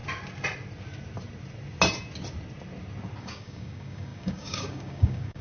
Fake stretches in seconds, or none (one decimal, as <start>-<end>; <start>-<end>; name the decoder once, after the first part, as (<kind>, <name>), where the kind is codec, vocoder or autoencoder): 3.2-5.4 (codec, DAC)